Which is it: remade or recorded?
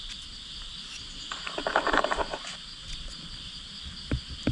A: recorded